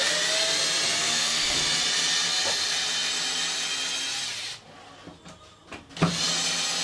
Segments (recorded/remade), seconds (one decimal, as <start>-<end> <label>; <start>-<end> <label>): 0.0-1.0 recorded; 1.0-1.6 remade; 1.6-6.8 recorded